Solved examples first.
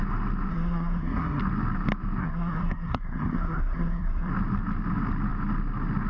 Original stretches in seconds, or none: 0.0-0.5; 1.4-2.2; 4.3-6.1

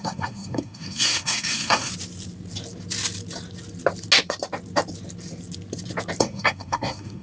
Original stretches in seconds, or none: 1.9-6.2

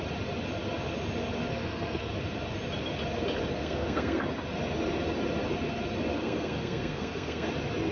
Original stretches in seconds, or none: 0.0-1.5; 2.1-3.6; 4.2-6.1; 7.5-7.9

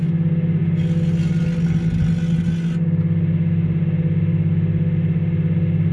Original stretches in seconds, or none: 0.0-5.9

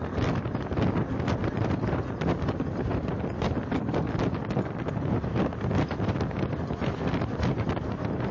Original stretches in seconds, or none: 0.0-8.3

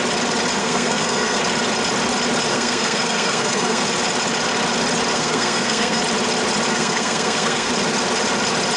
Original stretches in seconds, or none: 0.0-0.6; 1.4-2.5; 3.8-5.1; 6.0-6.7; 7.7-8.8